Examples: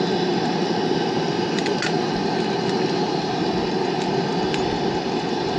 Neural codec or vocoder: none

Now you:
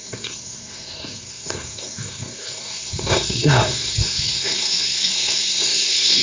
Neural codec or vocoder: codec, SNAC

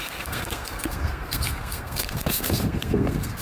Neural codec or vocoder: codec, SNAC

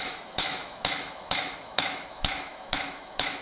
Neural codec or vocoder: autoencoder, DAC-VAE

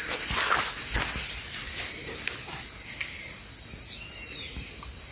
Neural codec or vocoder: none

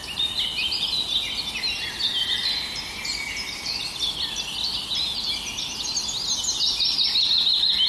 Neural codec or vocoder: none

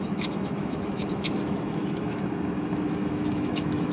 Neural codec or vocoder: autoencoder, DAC-VAE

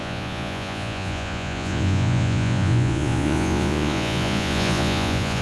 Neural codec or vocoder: vocoder, Vocos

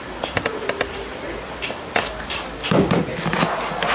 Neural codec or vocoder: none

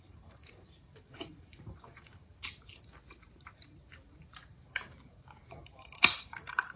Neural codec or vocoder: vocoder, BigVGAN v2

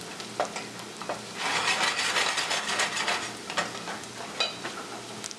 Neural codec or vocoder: none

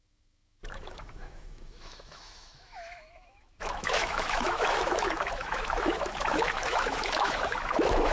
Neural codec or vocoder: autoencoder, DAC-VAE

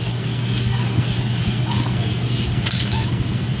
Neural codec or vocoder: codec, SNAC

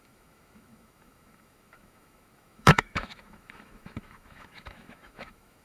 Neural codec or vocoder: autoencoder, DAC-VAE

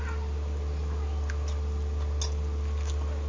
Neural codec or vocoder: none